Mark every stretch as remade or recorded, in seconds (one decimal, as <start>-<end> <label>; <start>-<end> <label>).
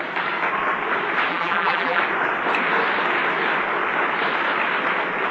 0.0-1.3 recorded; 1.3-2.0 remade; 2.0-5.3 recorded